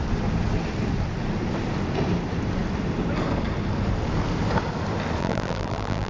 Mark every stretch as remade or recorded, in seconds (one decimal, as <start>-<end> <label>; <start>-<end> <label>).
0.0-5.2 recorded; 5.2-6.1 remade